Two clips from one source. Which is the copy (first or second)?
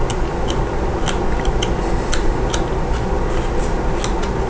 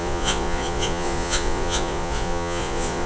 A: second